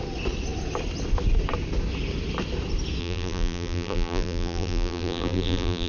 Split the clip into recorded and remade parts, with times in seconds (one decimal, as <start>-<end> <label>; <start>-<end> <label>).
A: 0.0-3.0 recorded; 3.0-5.9 remade

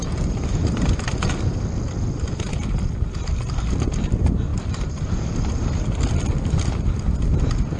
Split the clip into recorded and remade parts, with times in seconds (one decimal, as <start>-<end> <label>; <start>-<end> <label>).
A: 0.0-4.5 recorded; 4.5-6.0 remade; 6.0-7.8 recorded

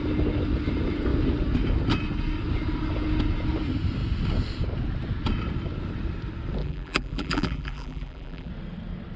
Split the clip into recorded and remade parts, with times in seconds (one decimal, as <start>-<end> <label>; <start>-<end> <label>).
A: 0.0-6.6 recorded; 6.6-8.5 remade; 8.5-9.2 recorded

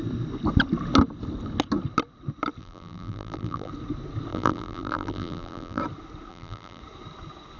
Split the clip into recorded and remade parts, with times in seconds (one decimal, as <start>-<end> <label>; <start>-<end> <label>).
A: 0.0-2.6 recorded; 2.6-3.7 remade; 3.7-4.3 recorded; 4.3-5.8 remade; 5.8-6.3 recorded; 6.3-6.8 remade; 6.8-7.6 recorded

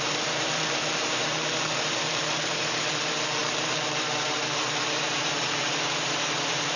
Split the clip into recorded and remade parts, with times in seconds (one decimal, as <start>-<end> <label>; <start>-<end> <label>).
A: 0.0-6.8 remade

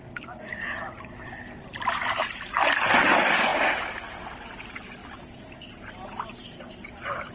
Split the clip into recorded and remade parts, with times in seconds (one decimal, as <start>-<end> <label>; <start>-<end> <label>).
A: 0.0-3.5 remade; 3.5-4.3 recorded; 4.3-5.0 remade; 5.0-6.4 recorded; 6.4-7.3 remade

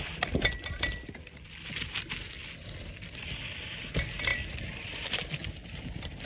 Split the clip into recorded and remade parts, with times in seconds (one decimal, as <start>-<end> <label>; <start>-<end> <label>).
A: 0.0-4.3 recorded; 4.3-5.0 remade; 5.0-6.3 recorded

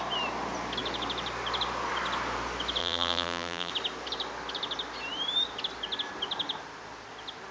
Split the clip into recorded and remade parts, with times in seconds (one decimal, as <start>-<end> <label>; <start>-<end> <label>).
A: 0.0-2.8 recorded; 2.8-3.7 remade; 3.7-7.5 recorded